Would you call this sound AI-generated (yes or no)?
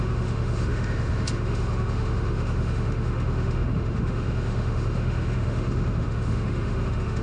yes